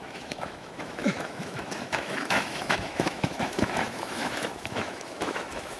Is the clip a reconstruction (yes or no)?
yes